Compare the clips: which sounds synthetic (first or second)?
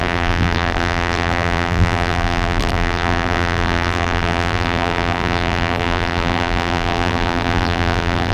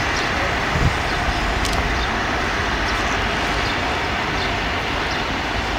first